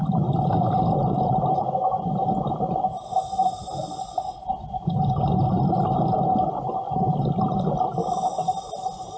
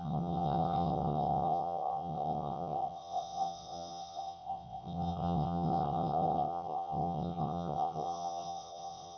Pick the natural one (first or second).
first